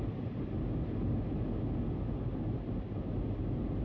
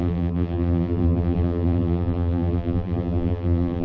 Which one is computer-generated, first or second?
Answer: second